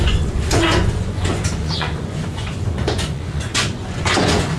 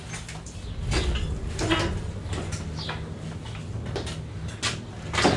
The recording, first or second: second